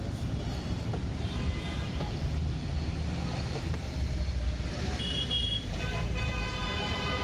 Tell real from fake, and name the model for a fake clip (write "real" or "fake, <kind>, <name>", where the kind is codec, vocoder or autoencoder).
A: fake, vocoder, BigVGAN v2